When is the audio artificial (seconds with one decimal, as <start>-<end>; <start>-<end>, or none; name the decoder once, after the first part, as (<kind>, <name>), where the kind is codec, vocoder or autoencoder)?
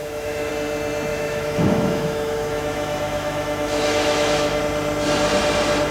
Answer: 0.0-0.5 (autoencoder, DAC-VAE); 1.1-4.6